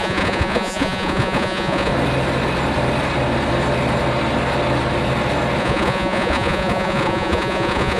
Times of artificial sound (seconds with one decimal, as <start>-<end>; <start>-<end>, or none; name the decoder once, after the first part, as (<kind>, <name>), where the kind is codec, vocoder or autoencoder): 0.0-1.9 (vocoder, Vocos); 5.6-8.0